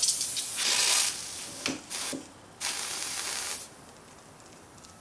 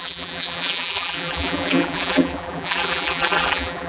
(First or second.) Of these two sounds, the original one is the first